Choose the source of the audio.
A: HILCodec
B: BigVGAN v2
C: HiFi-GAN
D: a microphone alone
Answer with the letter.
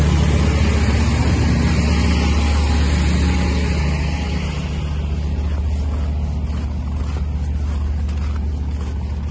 D